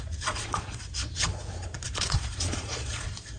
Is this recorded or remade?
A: remade